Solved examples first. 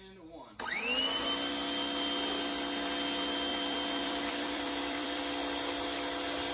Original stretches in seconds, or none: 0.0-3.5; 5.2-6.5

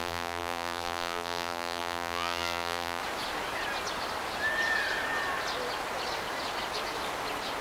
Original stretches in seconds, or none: 3.0-7.6

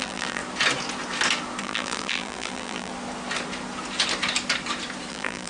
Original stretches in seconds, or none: 0.4-1.6; 2.9-5.1

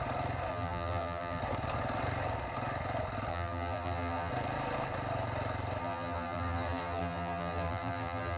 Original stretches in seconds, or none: 0.0-0.5; 1.4-3.3; 4.3-5.8

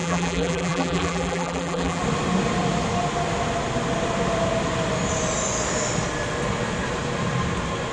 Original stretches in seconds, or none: 2.0-7.9